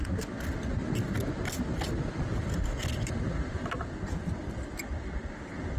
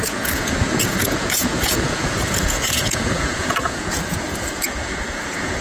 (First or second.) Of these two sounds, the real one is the first